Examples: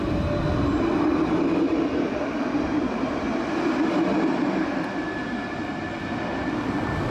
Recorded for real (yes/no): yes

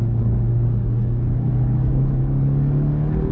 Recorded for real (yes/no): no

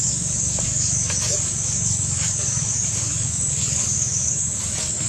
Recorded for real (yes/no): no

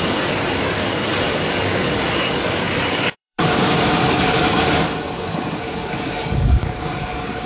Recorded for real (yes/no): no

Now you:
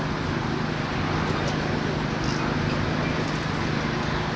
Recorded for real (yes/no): yes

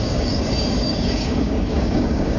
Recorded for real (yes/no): no